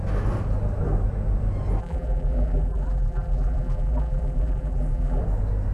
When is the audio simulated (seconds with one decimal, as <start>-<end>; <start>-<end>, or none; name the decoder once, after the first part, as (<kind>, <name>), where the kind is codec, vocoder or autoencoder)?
1.8-5.2 (vocoder, BigVGAN v2)